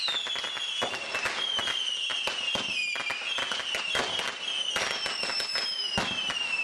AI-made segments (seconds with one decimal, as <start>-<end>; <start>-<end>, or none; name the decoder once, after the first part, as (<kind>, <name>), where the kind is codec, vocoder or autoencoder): none